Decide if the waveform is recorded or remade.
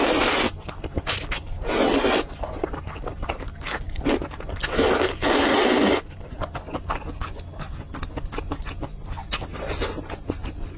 recorded